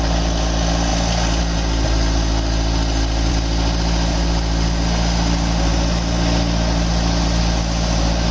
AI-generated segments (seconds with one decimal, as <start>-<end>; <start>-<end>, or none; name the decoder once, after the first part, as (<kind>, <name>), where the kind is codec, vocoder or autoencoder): none